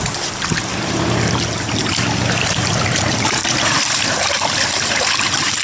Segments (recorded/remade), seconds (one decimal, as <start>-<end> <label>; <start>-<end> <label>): 0.0-0.7 recorded; 0.7-1.3 remade; 1.3-3.4 recorded; 3.4-4.9 remade; 4.9-5.6 recorded